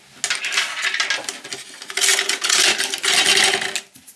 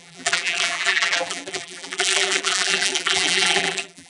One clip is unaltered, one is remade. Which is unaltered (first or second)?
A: first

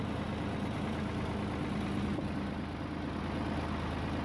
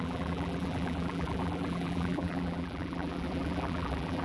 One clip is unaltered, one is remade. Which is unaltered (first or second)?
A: first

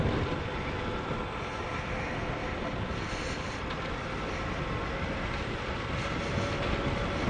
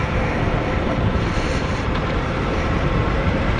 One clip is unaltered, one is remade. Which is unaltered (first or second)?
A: first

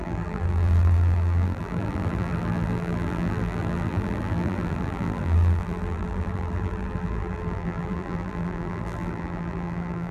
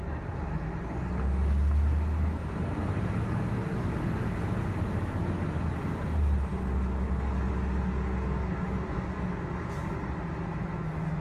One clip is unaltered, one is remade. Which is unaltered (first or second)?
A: second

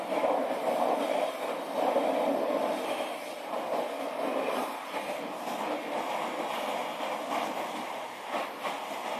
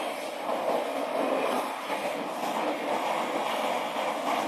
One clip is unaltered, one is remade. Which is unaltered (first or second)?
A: first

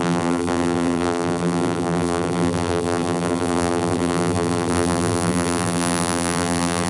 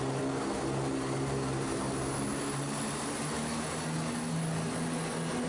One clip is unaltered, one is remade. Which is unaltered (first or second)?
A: second